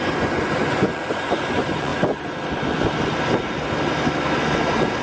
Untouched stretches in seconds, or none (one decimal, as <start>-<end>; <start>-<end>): 1.9-5.0